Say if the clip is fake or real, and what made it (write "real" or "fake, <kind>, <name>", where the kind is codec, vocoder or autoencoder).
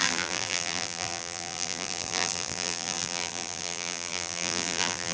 fake, vocoder, BigVGAN v2